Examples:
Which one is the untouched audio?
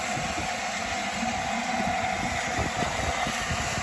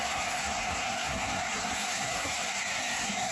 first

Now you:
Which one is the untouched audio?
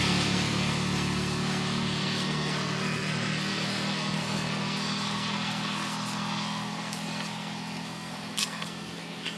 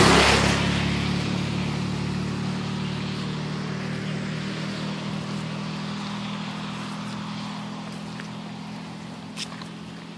second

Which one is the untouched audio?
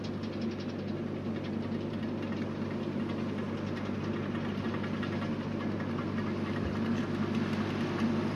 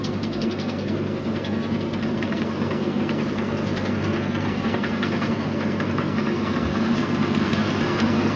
first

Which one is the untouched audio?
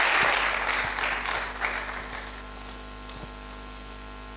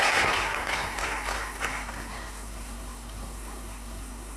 first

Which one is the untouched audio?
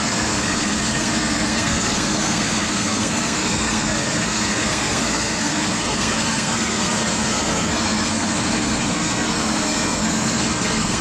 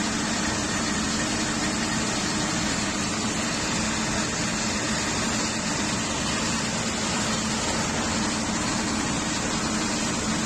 second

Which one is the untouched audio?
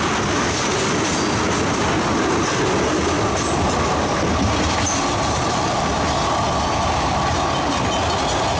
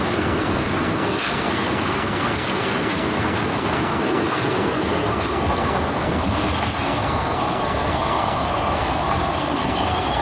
first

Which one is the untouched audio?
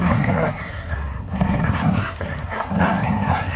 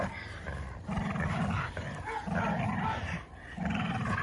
second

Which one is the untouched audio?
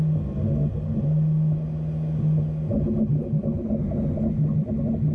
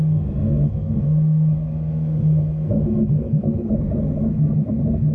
first